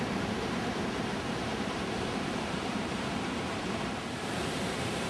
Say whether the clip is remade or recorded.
remade